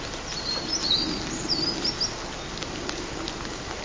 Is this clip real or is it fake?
real